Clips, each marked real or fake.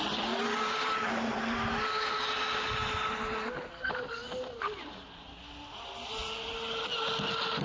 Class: real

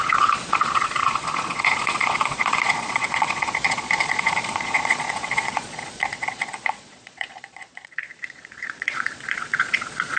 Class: fake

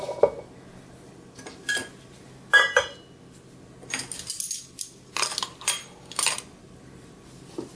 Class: real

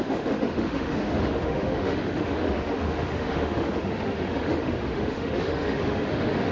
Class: fake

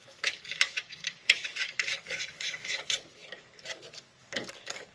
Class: fake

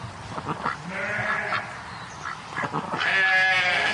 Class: real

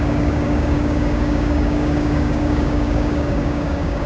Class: fake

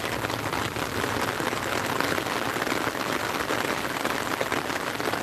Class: real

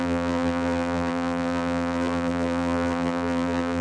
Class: fake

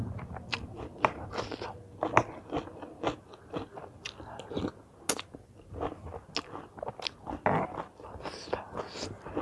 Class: real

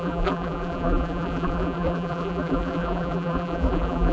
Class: fake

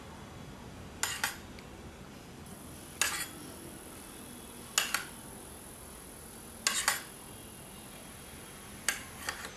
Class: real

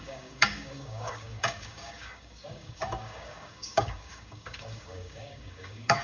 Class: fake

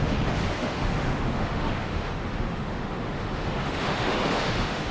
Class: fake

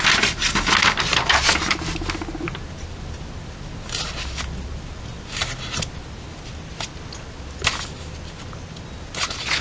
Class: real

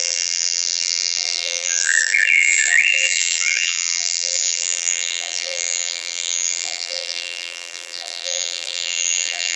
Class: fake